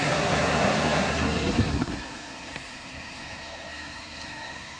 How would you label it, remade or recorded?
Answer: remade